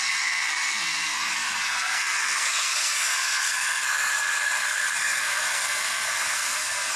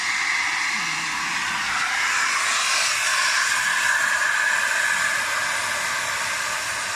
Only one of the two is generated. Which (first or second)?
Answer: first